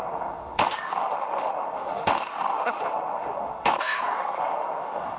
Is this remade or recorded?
remade